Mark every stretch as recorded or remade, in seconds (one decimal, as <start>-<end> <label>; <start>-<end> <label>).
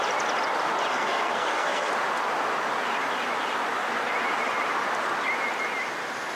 0.0-0.9 recorded; 0.9-1.9 remade; 1.9-6.4 recorded